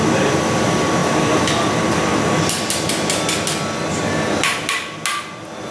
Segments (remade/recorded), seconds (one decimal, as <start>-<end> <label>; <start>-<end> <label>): 0.0-5.7 recorded